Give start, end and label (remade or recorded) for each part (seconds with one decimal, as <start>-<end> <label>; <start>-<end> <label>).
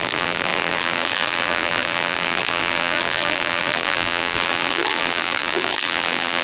0.0-6.4 remade